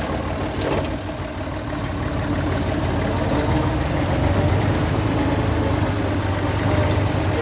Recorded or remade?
recorded